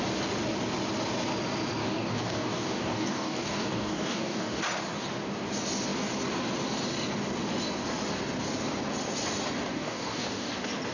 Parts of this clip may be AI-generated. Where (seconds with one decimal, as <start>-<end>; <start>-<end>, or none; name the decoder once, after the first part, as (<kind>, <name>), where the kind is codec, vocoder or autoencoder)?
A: 1.8-4.6 (codec, DAC); 9.7-10.5